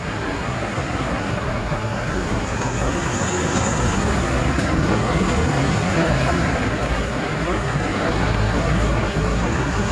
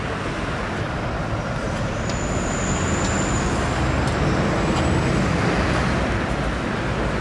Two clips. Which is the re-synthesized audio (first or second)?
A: first